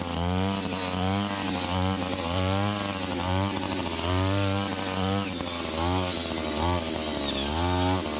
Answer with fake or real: real